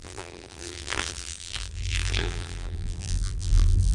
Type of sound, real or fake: fake